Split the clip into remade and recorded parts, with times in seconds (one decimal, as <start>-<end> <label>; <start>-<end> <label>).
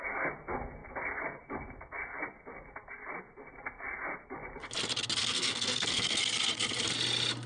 0.0-5.2 recorded; 5.2-6.2 remade; 6.2-7.5 recorded